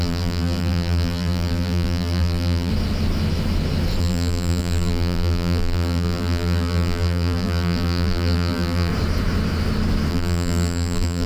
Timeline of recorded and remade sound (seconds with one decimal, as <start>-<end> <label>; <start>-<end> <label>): 0.0-2.7 remade; 2.7-4.0 recorded; 4.0-8.9 remade; 8.9-10.1 recorded; 10.1-11.3 remade